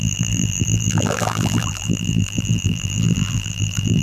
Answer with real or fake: fake